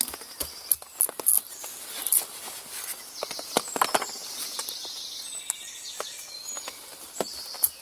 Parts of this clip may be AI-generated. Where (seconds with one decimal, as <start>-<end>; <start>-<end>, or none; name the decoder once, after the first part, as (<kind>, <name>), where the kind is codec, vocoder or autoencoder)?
none